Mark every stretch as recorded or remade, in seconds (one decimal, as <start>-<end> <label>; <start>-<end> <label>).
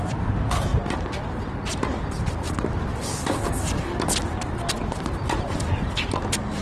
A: 0.0-6.6 recorded